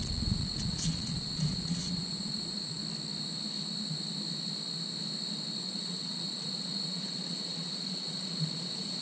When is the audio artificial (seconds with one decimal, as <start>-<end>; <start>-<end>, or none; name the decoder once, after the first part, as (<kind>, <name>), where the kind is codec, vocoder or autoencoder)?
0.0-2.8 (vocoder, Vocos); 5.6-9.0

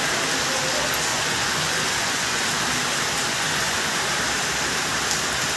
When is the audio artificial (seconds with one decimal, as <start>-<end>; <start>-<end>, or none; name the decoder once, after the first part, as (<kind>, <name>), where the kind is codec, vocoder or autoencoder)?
1.1-2.4 (vocoder, Vocos); 3.3-4.0

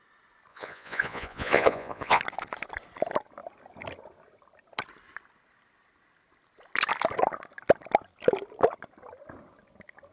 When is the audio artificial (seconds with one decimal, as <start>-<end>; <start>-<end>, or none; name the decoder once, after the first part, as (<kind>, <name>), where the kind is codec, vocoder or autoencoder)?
0.5-2.2 (vocoder, Vocos)